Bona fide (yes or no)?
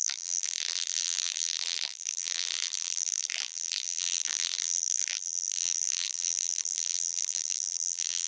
no